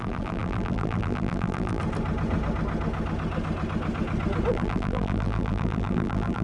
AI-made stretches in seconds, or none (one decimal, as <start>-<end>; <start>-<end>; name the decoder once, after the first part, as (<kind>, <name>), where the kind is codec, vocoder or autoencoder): 0.0-1.8 (vocoder, BigVGAN v2); 4.5-6.4